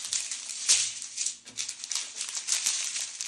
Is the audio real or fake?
real